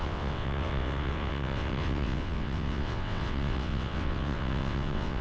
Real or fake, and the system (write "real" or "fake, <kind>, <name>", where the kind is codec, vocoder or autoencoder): fake, vocoder, WaveNeXt